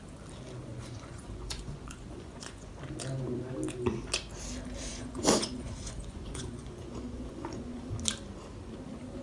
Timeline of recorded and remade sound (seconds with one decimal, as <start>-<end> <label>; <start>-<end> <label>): 0.0-0.6 recorded; 0.6-2.7 remade; 2.7-4.9 recorded; 4.9-7.8 remade; 7.8-9.2 recorded

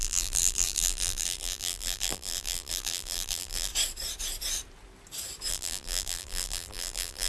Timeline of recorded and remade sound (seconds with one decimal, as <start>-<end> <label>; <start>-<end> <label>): 0.0-3.7 remade; 3.7-5.5 recorded; 5.5-7.3 remade

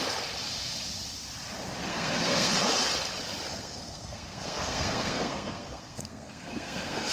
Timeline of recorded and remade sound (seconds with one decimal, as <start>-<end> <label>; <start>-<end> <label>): 0.0-1.9 recorded; 1.9-2.5 remade; 2.5-3.5 recorded; 3.5-7.1 remade

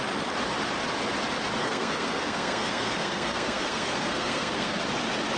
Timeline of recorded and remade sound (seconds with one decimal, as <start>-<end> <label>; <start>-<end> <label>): 0.0-1.6 recorded; 1.6-4.8 remade; 4.8-5.4 recorded

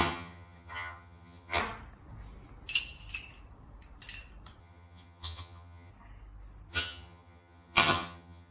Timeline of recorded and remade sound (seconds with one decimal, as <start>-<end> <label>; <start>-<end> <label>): 0.0-1.6 remade; 1.6-4.6 recorded; 4.6-5.9 remade; 5.9-6.7 recorded; 6.7-8.5 remade

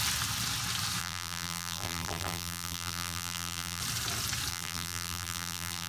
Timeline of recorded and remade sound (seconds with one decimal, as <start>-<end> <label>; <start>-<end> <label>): 0.0-1.0 recorded; 1.0-3.8 remade; 3.8-4.5 recorded; 4.5-5.9 remade

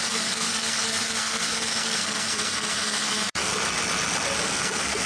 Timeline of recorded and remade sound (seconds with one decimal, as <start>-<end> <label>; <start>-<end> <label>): 0.0-3.5 remade; 3.5-4.4 recorded; 4.4-5.1 remade

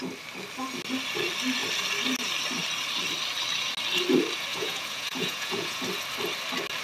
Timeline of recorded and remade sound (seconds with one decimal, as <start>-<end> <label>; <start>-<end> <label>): 0.0-4.5 recorded; 4.5-5.8 remade; 5.8-6.8 recorded